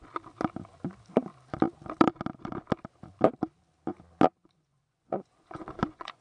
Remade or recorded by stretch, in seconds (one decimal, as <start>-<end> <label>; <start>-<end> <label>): 0.0-4.4 recorded; 4.4-6.2 remade